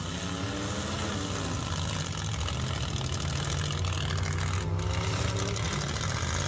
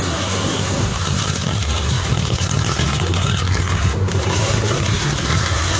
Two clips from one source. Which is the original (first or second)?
first